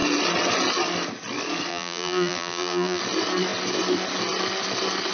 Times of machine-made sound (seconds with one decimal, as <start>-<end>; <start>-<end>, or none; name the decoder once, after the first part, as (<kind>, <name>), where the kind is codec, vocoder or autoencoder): 1.7-3.0 (vocoder, BigVGAN v2)